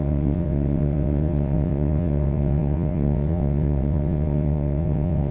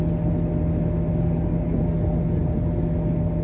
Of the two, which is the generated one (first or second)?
first